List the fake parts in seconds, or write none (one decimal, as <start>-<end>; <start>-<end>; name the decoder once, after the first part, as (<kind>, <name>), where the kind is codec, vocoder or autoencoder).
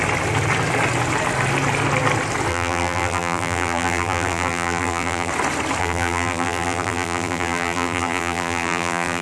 2.5-5.3 (vocoder, BigVGAN v2); 5.8-9.2